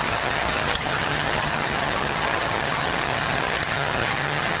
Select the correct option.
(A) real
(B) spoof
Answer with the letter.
B